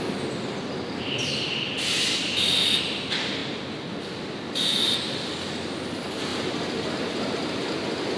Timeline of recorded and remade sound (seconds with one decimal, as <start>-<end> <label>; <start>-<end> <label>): 0.0-6.3 recorded; 6.3-7.7 remade; 7.7-8.2 recorded